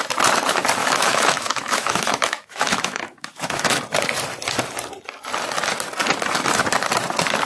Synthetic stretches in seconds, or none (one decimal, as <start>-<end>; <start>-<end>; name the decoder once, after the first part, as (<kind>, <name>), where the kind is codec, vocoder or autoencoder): 0.8-3.8 (autoencoder, DAC-VAE)